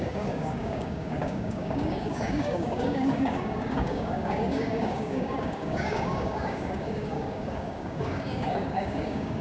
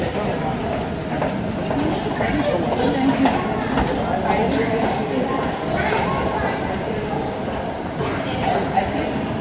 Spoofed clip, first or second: first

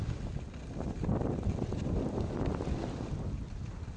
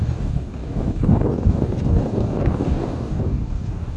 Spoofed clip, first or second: second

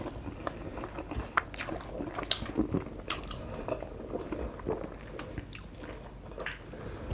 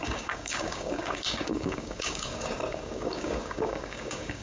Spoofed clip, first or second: second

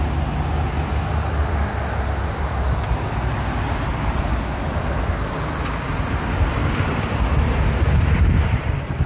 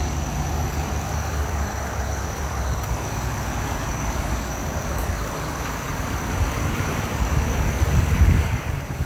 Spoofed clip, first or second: second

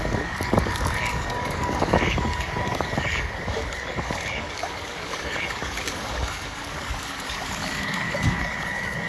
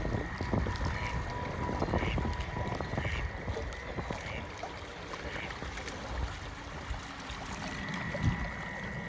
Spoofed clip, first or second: first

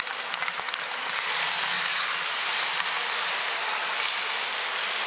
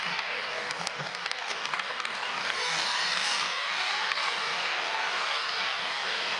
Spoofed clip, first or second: second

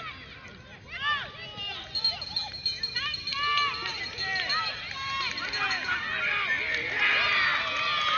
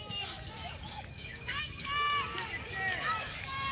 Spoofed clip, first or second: second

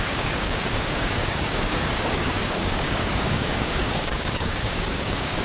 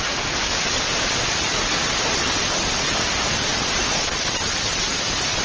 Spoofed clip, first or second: first